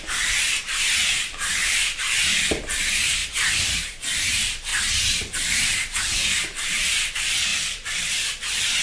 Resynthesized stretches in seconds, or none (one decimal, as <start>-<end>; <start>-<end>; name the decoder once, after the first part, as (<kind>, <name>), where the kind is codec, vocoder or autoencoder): 0.0-4.7 (vocoder, BigVGAN v2); 5.6-8.8